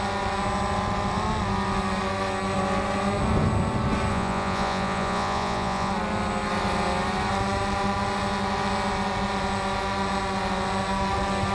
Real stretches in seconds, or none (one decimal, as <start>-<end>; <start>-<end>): 0.0-4.1; 5.9-11.5